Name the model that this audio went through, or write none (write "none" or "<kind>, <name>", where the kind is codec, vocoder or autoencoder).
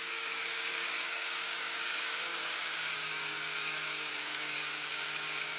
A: codec, DAC